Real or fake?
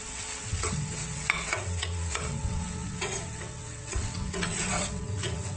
fake